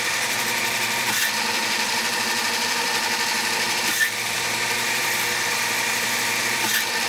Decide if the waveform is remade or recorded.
remade